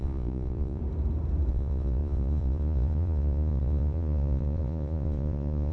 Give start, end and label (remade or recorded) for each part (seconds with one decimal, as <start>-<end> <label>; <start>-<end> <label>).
0.0-0.8 remade; 0.8-1.5 recorded; 1.5-5.7 remade